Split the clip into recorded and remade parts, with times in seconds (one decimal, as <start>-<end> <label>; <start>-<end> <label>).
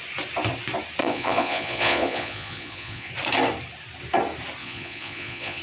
0.0-1.0 recorded; 1.0-3.1 remade; 3.1-4.6 recorded; 4.6-5.6 remade